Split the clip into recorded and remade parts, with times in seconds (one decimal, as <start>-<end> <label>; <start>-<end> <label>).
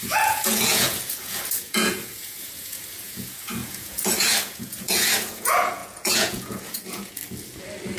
0.0-7.2 remade; 7.2-8.0 recorded